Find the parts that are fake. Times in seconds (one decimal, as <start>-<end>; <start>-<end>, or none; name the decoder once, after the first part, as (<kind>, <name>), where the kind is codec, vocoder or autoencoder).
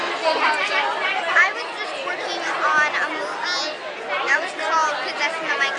none